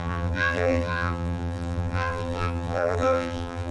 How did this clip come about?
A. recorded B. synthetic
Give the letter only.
B